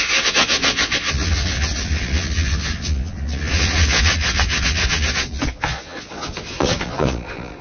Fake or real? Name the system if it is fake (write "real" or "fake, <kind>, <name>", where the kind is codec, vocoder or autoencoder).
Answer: fake, vocoder, Vocos